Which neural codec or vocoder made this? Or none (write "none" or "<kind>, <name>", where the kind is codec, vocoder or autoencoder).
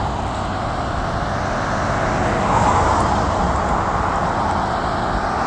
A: none